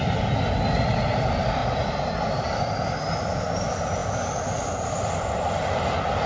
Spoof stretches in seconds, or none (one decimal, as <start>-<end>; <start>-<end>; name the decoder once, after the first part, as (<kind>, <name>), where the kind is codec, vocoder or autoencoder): none